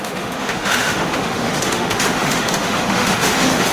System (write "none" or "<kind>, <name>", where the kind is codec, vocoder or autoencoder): autoencoder, DAC-VAE